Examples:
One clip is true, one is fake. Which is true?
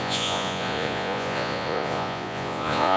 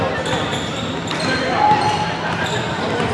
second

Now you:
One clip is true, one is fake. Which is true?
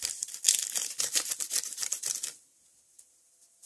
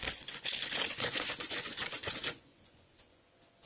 first